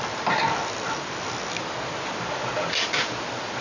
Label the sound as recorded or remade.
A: recorded